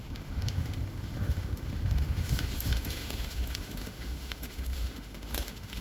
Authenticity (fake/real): fake